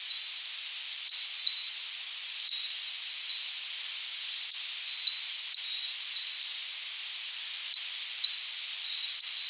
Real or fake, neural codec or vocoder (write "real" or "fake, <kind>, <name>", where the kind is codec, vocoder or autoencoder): real